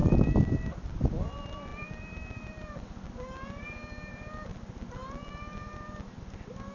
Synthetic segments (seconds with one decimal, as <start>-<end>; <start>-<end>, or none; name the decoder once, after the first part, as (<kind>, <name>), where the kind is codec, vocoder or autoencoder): 0.0-0.6 (vocoder, BigVGAN v2); 4.5-5.3